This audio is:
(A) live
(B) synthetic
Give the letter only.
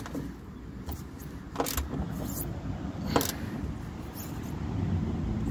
A